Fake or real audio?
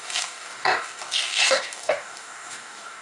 fake